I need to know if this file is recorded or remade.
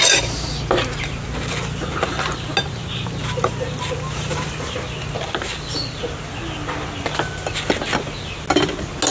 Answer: recorded